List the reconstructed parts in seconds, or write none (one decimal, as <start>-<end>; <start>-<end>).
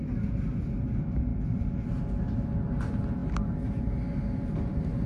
none